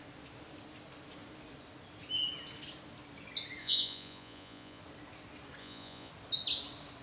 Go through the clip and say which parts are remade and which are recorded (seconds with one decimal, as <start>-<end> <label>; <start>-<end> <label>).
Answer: 0.0-3.6 recorded; 3.6-4.8 remade; 4.8-5.6 recorded; 5.6-6.1 remade; 6.1-7.0 recorded